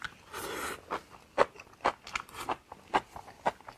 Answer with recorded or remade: recorded